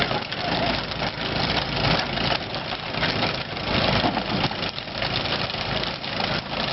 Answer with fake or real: real